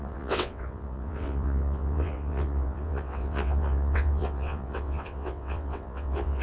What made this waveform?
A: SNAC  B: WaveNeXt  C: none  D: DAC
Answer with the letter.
B